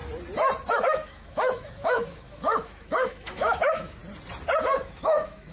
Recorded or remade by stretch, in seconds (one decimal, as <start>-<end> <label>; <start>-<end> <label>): 0.0-0.7 recorded; 0.7-4.0 remade; 4.0-4.6 recorded; 4.6-5.5 remade